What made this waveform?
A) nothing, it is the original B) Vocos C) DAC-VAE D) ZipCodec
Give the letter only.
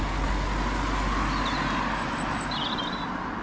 A